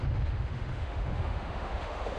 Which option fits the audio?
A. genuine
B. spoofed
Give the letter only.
B